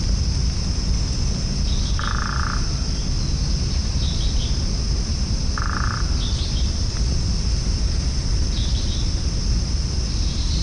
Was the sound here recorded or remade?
recorded